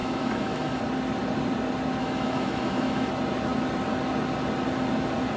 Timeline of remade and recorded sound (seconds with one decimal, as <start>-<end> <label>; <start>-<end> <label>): 0.0-0.8 remade; 0.8-2.0 recorded; 2.0-3.1 remade; 3.1-5.4 recorded